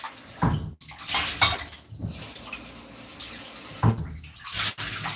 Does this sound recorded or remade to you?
recorded